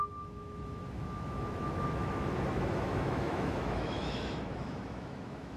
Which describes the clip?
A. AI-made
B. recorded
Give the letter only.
A